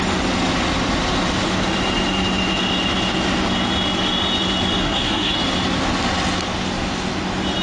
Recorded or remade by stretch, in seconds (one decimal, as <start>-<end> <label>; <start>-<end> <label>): 0.0-4.8 recorded; 4.8-5.3 remade; 5.3-7.6 recorded